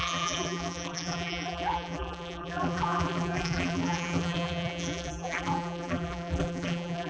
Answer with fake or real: fake